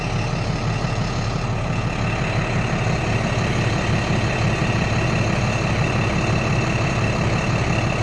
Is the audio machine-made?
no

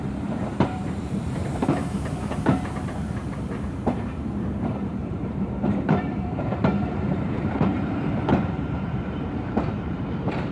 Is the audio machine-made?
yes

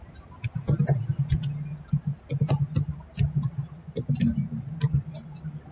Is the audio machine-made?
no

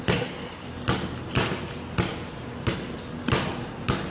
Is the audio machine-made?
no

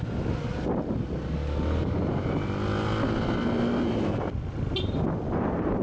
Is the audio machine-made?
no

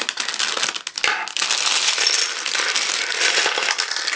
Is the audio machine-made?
no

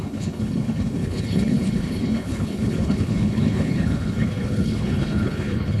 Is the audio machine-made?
yes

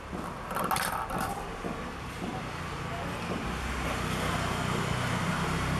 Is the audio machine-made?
no